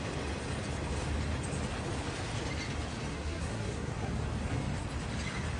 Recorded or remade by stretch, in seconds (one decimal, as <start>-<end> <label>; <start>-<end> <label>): 0.0-3.1 recorded; 3.1-4.2 remade; 4.2-5.6 recorded